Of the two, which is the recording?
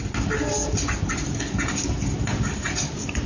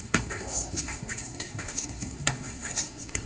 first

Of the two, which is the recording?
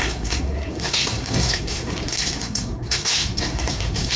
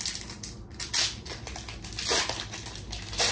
second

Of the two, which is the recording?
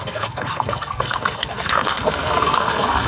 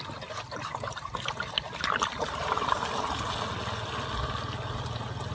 second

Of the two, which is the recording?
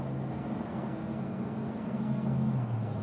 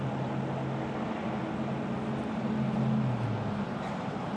second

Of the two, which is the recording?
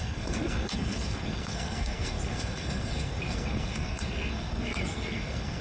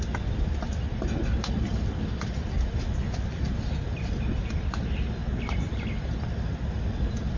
second